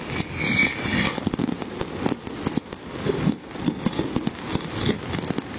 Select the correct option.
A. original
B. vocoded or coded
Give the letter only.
A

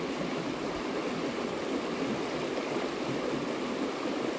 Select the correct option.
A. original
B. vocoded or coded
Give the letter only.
A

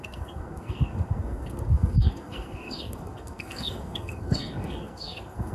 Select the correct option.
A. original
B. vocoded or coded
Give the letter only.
B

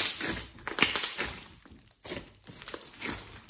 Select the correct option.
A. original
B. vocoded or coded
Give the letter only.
A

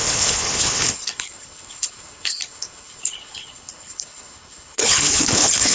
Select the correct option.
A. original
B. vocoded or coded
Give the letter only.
B